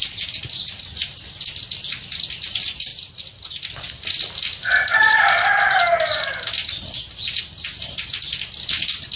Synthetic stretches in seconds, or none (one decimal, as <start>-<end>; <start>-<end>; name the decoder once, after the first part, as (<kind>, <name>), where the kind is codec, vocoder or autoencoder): none